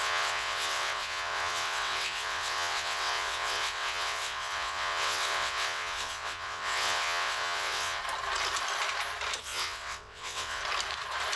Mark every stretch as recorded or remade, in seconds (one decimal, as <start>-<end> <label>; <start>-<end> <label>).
0.0-8.0 remade; 8.0-9.4 recorded; 9.4-10.6 remade; 10.6-11.4 recorded